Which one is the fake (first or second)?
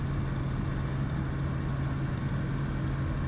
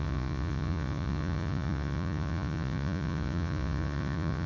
second